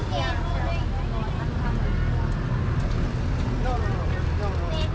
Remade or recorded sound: recorded